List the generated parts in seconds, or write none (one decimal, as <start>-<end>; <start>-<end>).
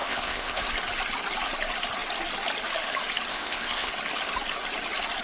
0.0-0.6; 3.3-3.9